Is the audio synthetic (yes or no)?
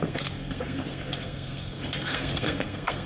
yes